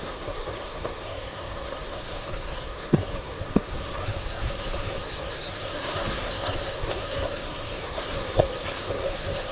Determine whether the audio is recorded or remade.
remade